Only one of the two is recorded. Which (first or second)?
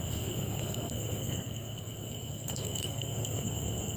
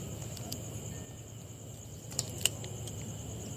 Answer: second